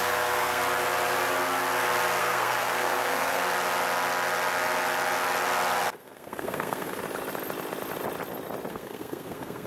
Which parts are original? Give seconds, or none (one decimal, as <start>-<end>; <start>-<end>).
0.6-2.2; 3.4-5.9; 7.0-8.7